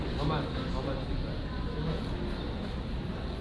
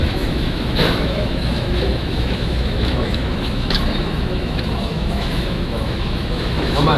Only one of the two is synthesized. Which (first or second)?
second